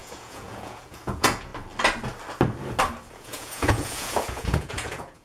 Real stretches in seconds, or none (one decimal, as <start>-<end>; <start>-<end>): 1.5-3.1